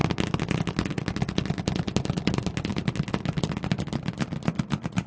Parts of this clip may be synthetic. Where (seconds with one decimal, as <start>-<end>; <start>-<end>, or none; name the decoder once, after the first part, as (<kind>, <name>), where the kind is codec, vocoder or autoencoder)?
none